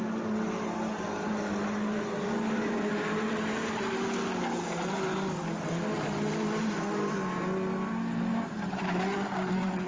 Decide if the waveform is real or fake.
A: real